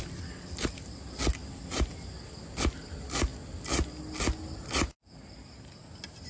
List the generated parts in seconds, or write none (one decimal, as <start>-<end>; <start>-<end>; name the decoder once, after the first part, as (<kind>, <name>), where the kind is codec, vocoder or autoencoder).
none